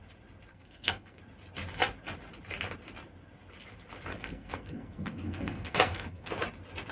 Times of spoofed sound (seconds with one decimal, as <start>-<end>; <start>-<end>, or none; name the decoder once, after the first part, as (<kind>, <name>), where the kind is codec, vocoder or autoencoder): 0.5-1.2 (codec, SNAC); 4.1-6.3